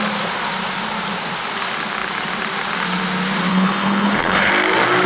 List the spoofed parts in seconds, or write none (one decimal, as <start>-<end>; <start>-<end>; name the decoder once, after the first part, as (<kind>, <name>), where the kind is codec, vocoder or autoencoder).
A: 3.5-4.5 (codec, HILCodec)

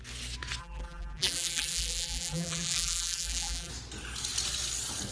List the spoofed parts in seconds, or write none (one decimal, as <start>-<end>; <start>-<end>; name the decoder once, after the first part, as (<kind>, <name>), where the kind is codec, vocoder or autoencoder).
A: 0.6-3.7 (vocoder, BigVGAN v2)